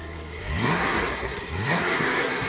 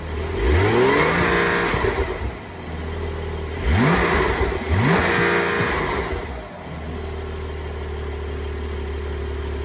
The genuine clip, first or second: second